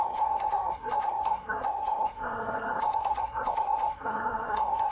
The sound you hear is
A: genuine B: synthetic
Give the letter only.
B